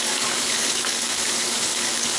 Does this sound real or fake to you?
fake